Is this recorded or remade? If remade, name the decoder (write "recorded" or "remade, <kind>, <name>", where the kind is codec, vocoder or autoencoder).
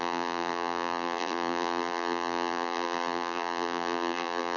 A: remade, vocoder, BigVGAN v2